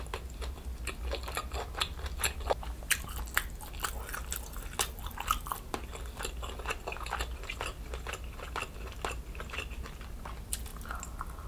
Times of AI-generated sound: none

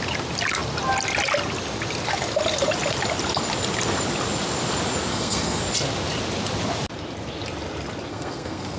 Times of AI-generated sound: 5.1-5.6 (codec, SNAC); 8.1-8.8

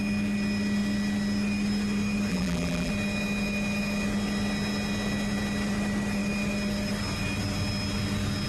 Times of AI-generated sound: 2.3-2.9 (vocoder, BigVGAN v2)